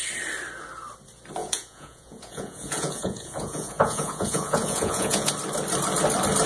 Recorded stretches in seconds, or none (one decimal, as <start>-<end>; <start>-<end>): 0.0-1.4; 5.3-6.5